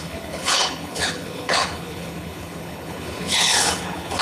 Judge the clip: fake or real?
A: fake